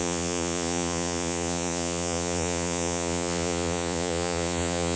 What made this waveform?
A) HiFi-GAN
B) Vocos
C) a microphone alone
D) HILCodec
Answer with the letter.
B